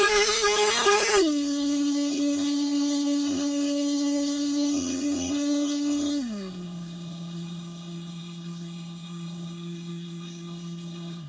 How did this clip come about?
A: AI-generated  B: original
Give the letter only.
A